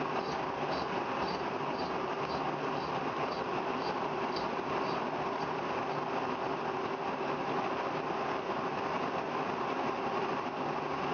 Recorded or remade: recorded